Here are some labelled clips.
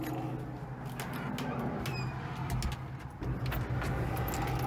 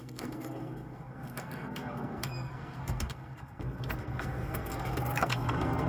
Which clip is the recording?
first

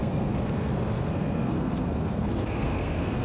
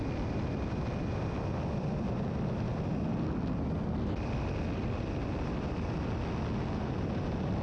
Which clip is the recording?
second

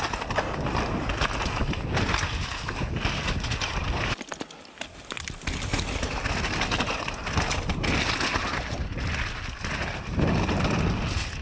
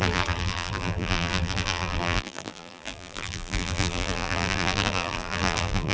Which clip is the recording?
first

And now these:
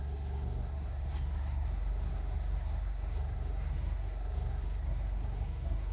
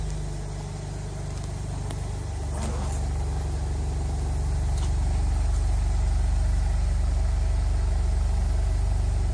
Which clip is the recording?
second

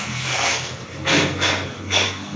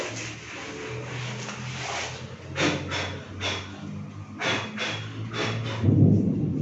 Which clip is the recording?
second